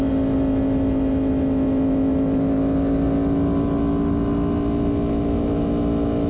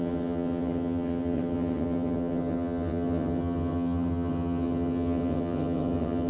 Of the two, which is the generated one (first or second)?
second